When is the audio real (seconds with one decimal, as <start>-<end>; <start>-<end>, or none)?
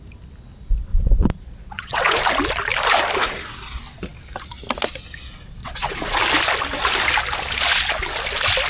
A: 0.0-0.9; 2.2-5.6; 6.2-8.7